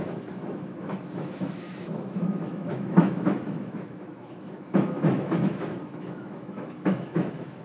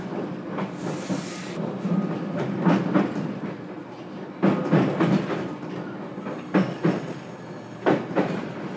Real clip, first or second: second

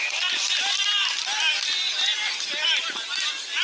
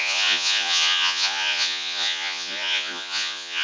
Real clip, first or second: first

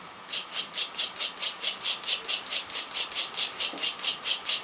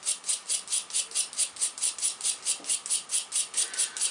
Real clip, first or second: second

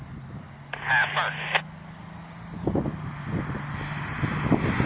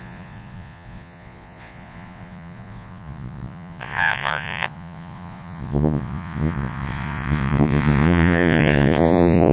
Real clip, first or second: first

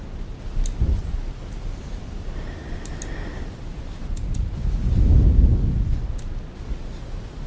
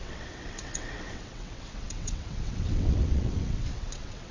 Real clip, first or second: first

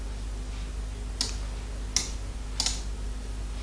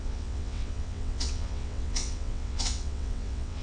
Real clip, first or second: first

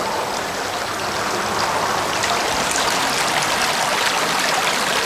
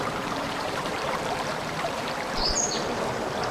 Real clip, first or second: first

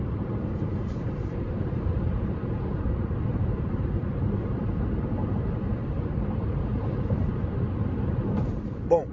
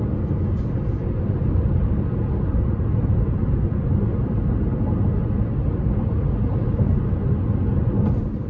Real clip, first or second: second